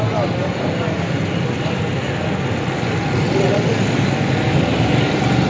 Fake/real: real